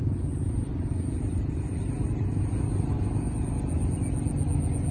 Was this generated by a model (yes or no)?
no